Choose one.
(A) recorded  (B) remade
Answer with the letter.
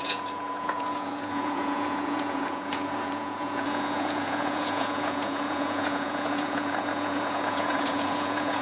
B